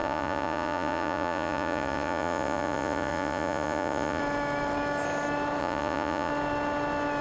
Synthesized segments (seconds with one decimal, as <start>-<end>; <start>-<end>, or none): 0.0-4.2; 5.6-6.3